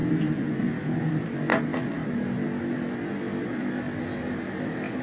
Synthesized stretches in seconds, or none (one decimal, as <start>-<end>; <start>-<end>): none